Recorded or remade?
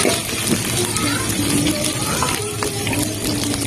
recorded